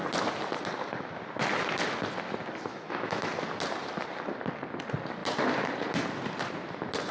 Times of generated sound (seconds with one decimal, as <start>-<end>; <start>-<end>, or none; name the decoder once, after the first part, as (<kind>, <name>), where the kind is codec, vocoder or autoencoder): 2.7-3.3 (autoencoder, DAC-VAE)